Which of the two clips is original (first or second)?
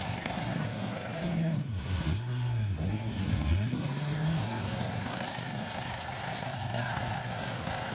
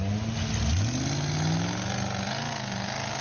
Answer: second